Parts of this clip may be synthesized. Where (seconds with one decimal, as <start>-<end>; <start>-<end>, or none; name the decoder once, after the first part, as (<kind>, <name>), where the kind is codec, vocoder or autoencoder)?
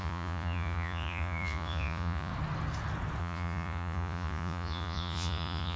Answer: 0.0-2.3 (vocoder, Vocos); 3.2-5.8